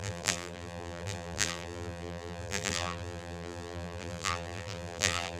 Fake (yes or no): yes